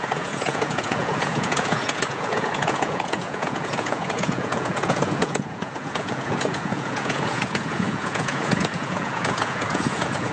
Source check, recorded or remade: remade